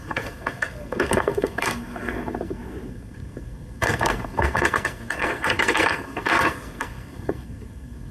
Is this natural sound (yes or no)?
no